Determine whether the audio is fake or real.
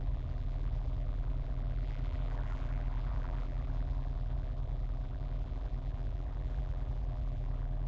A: fake